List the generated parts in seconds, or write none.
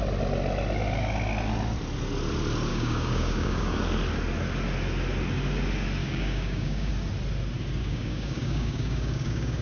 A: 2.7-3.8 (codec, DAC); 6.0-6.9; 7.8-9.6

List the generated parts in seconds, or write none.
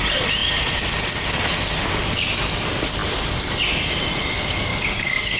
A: 4.7-5.4 (codec, DAC)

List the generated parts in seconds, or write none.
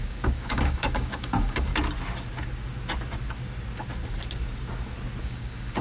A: 0.0-1.7 (codec, DAC); 5.2-5.8